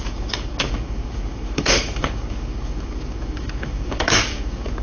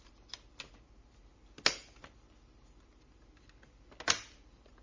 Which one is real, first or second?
second